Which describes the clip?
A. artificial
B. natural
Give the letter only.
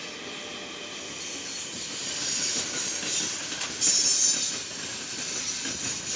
B